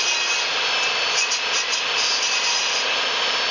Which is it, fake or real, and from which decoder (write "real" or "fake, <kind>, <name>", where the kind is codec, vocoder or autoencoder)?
real